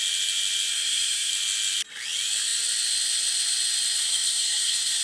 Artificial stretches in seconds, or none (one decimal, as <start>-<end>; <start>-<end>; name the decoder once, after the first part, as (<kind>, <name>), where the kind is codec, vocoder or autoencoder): 0.7-1.3 (codec, SNAC); 4.0-5.0